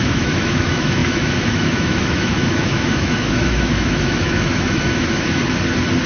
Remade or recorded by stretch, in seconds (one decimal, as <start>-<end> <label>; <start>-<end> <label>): 0.0-5.4 remade; 5.4-6.1 recorded